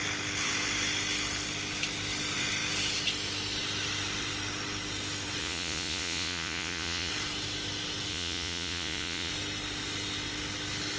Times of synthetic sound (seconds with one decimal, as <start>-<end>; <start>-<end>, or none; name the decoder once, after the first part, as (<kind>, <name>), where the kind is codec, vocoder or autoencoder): 5.4-7.1 (vocoder, Vocos); 8.1-9.3